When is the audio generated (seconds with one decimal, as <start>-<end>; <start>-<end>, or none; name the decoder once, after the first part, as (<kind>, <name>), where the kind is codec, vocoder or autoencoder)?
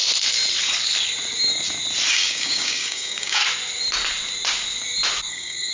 2.1-3.4 (codec, DAC); 5.3-5.7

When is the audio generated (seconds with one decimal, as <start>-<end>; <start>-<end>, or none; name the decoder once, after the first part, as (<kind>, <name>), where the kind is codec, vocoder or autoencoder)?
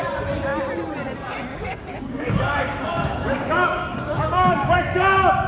1.5-4.8 (codec, DAC)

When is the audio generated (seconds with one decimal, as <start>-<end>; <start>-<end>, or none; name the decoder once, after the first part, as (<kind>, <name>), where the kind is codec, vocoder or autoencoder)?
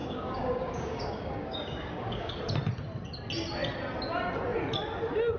0.0-2.3 (codec, DAC)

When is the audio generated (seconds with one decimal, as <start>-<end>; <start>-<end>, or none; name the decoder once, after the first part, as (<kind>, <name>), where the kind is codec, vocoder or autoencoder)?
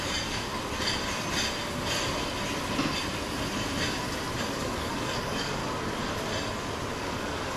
0.0-0.5 (codec, DAC); 4.4-5.6; 6.9-7.6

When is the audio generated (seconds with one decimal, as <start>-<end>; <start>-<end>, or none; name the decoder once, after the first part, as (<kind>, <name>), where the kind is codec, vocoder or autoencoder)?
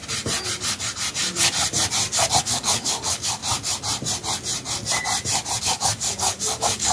2.4-3.4 (codec, DAC); 5.6-6.9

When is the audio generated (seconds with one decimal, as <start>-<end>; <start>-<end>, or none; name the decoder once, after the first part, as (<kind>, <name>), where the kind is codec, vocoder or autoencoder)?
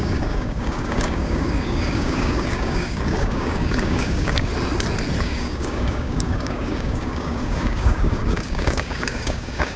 0.0-4.5 (codec, DAC); 5.2-9.8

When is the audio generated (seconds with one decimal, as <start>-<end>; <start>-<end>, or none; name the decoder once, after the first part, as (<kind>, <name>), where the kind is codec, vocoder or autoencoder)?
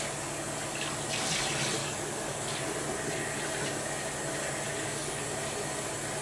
1.8-2.5 (codec, DAC); 4.7-5.2